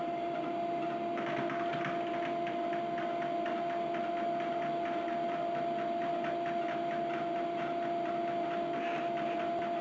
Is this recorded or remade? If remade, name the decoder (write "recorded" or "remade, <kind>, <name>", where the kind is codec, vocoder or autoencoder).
recorded